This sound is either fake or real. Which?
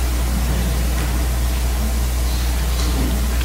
real